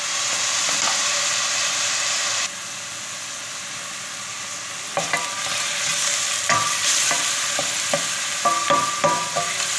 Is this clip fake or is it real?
real